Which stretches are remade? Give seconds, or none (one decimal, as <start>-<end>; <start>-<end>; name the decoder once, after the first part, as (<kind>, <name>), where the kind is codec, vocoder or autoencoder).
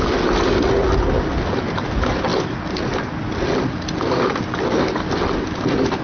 none